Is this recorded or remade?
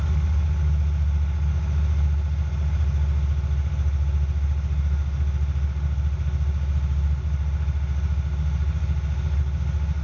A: recorded